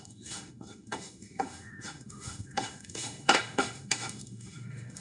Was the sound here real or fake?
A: fake